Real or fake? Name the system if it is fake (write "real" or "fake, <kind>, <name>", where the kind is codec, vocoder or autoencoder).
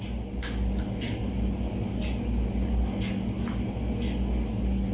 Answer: real